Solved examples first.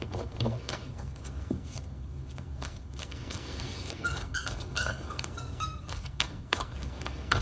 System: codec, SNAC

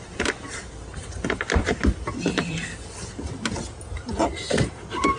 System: none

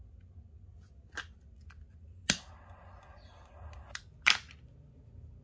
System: none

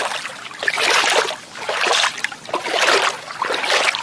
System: none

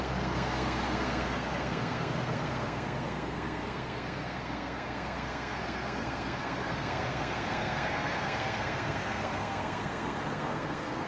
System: codec, SNAC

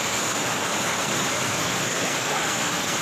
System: codec, SNAC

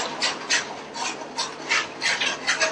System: none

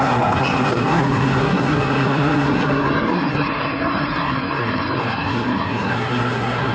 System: codec, SNAC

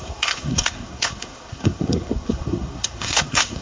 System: codec, SNAC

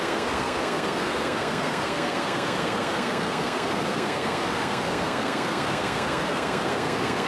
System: codec, SNAC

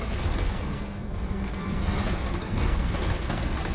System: codec, SNAC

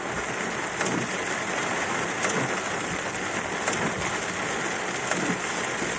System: none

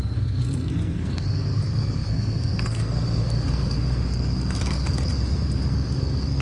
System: codec, SNAC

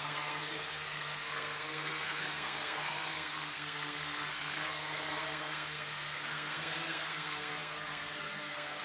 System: codec, SNAC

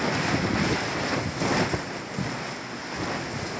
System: none